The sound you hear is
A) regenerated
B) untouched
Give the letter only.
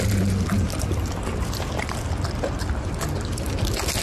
B